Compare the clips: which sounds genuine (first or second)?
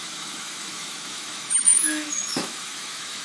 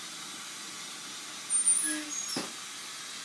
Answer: second